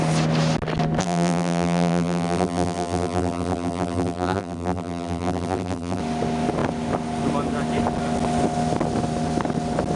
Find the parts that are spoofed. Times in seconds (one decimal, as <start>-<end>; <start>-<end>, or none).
1.0-6.0